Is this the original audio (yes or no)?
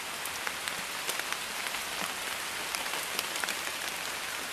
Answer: yes